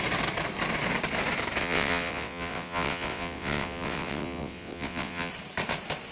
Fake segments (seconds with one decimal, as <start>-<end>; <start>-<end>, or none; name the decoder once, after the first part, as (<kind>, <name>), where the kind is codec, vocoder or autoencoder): 1.6-5.3 (vocoder, WaveNeXt)